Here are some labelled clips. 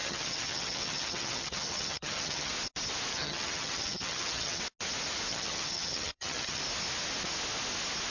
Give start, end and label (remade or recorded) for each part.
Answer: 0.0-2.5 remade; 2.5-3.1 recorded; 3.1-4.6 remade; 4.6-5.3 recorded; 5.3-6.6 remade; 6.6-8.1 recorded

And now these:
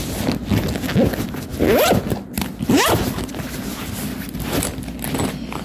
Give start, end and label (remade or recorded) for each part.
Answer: 0.0-5.6 recorded

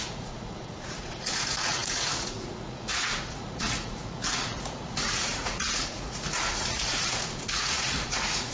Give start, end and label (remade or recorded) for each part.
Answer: 0.0-8.5 remade